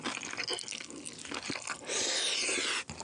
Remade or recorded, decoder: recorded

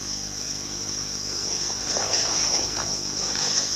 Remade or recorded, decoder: remade, codec, SNAC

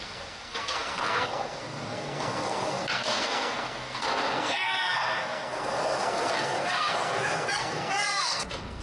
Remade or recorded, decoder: remade, codec, SNAC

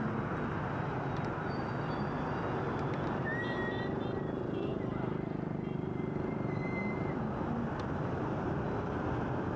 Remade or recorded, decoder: recorded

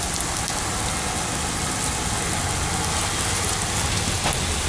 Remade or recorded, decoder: recorded